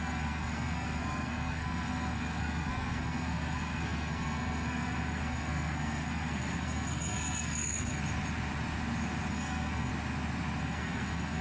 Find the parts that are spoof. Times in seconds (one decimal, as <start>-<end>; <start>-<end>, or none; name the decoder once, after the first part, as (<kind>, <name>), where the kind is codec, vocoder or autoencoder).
0.0-8.0 (codec, SNAC); 9.3-9.9; 10.6-11.4